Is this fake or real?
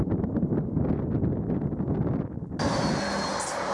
real